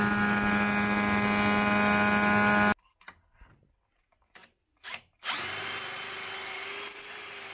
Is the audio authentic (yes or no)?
yes